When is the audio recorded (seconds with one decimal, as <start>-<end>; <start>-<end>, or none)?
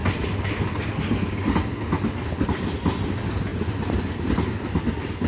0.0-5.3